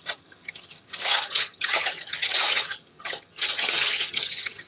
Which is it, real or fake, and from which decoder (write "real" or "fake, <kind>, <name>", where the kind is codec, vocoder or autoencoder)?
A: fake, vocoder, HiFi-GAN